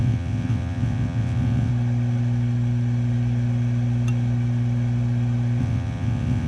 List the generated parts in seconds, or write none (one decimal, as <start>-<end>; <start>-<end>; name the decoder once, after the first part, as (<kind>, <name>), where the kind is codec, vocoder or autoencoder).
0.0-1.7 (vocoder, WaveNeXt); 5.6-6.5